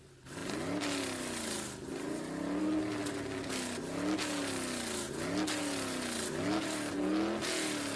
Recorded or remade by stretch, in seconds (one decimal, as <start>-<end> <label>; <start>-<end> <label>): 0.0-8.0 recorded